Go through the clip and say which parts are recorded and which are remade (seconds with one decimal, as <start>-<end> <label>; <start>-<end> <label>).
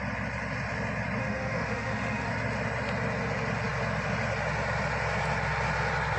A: 0.0-1.2 recorded; 1.2-2.3 remade; 2.3-6.2 recorded